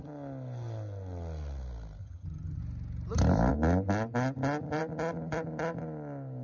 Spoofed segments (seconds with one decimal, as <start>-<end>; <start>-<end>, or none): 2.0-2.6